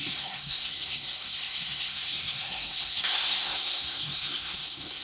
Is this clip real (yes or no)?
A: no